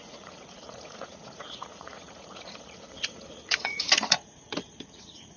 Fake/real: fake